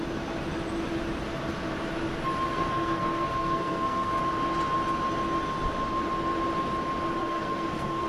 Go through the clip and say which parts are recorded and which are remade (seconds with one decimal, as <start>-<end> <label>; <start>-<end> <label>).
0.0-2.5 recorded; 2.5-4.2 remade; 4.2-7.2 recorded; 7.2-8.1 remade